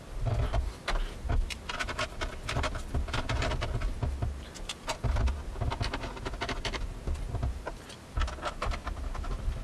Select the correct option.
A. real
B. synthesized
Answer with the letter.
A